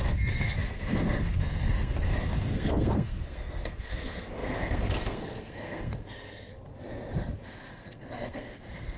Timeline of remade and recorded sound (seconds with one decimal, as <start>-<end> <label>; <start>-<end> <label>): 0.0-6.5 remade; 6.5-7.7 recorded; 7.7-9.0 remade